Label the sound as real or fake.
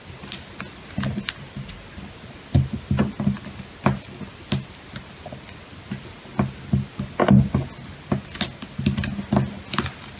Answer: real